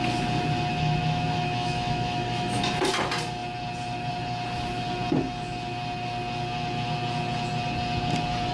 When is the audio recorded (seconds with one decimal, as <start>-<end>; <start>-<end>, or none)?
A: 0.0-0.7; 2.6-8.5